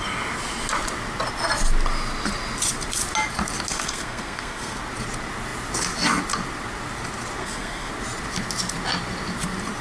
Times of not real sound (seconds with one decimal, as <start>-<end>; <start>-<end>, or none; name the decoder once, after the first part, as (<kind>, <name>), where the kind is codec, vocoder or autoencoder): 3.7-4.8 (codec, SNAC); 7.4-7.9